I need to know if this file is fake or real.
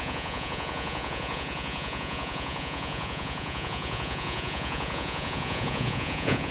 fake